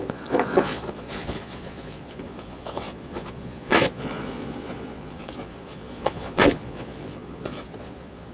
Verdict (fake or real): fake